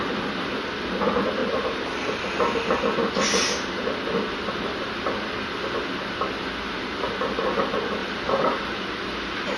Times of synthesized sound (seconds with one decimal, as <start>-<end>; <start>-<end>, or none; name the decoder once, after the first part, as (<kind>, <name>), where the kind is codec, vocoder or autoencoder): 1.4-2.2 (vocoder, BigVGAN v2); 8.0-9.6